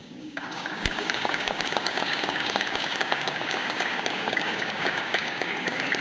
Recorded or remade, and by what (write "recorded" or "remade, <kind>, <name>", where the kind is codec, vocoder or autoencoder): remade, codec, DAC